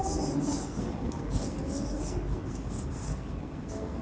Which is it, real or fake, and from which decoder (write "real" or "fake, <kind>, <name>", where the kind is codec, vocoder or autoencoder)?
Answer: fake, codec, SNAC